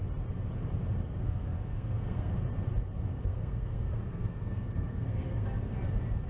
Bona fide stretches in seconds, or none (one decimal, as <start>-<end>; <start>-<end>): 0.0-1.2; 2.3-3.2; 5.7-6.3